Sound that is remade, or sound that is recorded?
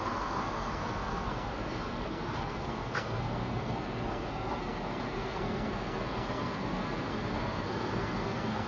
remade